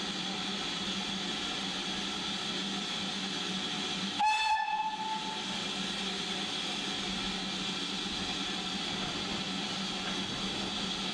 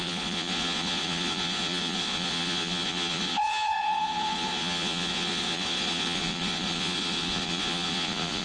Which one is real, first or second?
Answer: first